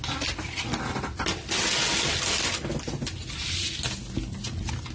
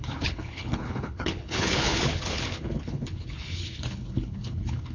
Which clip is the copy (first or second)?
second